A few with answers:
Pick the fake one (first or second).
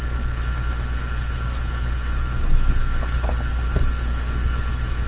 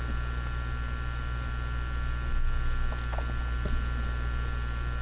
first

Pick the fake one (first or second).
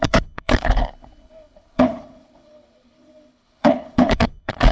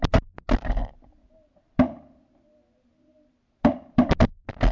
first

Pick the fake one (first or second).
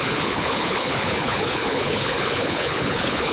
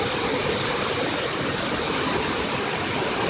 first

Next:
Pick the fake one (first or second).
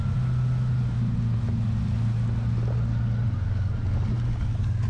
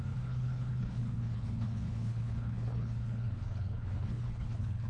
second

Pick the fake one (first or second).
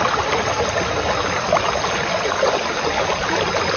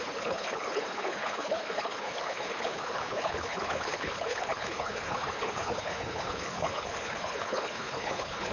second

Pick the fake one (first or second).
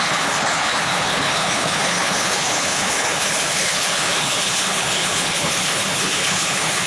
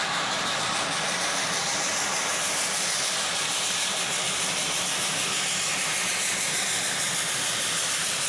first